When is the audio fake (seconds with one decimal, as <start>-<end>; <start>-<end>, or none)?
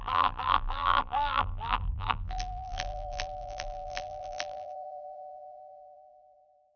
0.0-6.8